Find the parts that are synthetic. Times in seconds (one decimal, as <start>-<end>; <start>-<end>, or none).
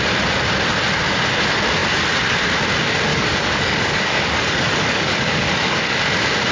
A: 3.1-6.0